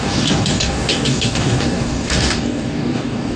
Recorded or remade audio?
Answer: remade